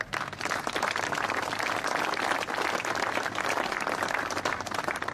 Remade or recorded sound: recorded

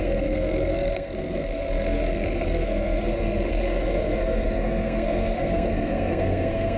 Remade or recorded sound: remade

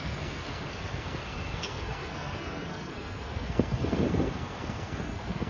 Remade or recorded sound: remade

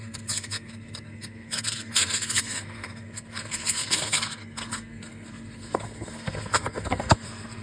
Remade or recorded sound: remade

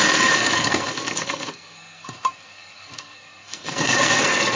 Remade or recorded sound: remade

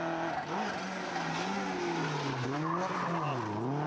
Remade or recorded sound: recorded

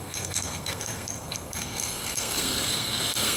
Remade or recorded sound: remade